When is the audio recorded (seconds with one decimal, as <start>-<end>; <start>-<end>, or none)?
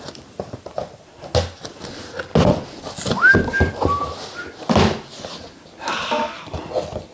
0.0-7.1